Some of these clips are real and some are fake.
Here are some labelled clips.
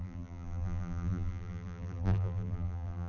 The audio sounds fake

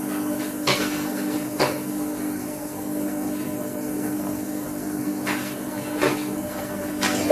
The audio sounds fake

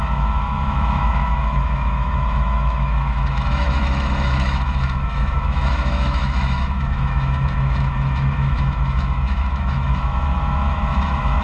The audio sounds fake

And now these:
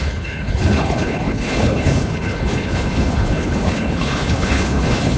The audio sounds fake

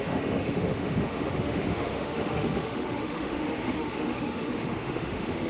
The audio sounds fake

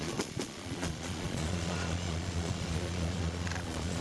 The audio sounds fake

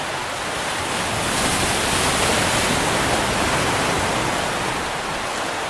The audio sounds real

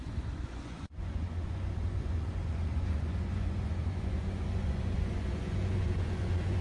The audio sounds fake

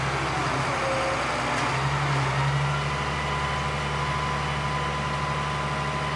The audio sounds real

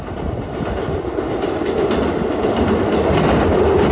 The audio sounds real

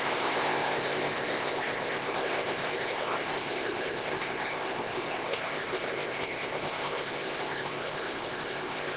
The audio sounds fake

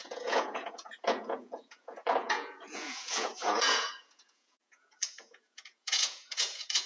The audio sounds fake